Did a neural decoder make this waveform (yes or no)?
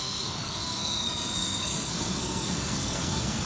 yes